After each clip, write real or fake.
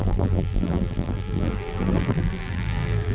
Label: fake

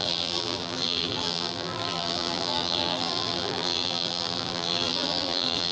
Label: fake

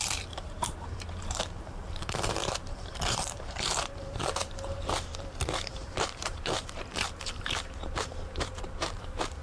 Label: fake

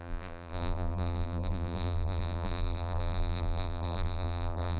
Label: fake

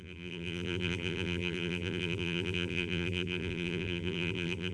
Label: fake